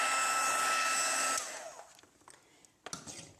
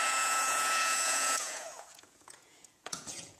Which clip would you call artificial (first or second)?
second